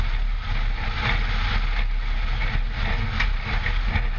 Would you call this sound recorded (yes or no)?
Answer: yes